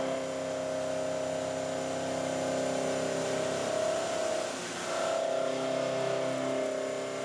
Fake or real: real